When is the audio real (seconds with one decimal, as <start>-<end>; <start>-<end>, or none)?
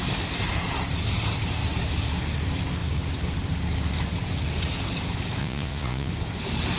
0.0-5.4; 6.1-6.8